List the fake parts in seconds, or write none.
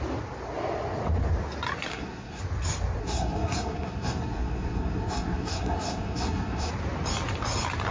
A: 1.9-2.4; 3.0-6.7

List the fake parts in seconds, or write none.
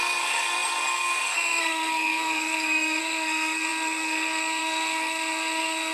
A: 0.0-5.9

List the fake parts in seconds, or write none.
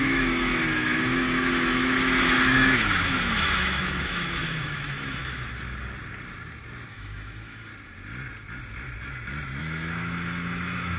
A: 0.0-5.2; 6.9-7.7; 9.6-11.0